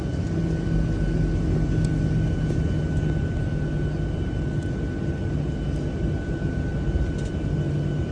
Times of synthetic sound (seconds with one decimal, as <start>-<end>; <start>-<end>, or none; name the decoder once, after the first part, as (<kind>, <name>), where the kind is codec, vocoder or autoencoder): none